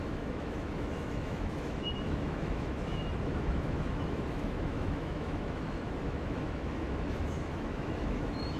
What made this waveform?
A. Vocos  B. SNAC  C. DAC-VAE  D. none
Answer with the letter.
C